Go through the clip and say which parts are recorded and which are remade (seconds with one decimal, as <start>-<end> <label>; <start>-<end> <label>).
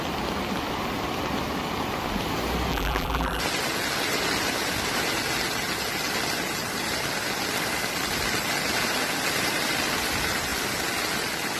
0.0-2.7 recorded; 2.7-3.4 remade; 3.4-11.6 recorded